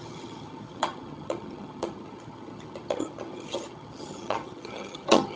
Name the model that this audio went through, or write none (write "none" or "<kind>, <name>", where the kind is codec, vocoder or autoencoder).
vocoder, HiFi-GAN